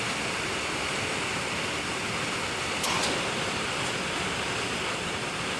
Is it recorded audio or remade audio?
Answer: recorded